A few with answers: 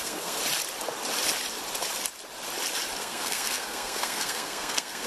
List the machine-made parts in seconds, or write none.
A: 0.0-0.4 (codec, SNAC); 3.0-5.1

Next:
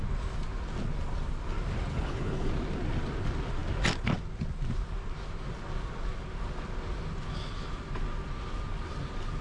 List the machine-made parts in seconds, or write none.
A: 1.9-2.5 (codec, HILCodec)